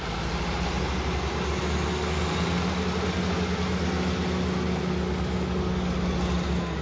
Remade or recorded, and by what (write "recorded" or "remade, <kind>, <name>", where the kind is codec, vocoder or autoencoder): recorded